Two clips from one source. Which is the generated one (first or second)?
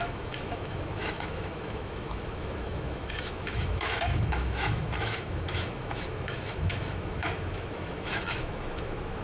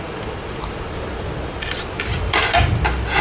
first